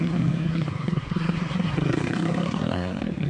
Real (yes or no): no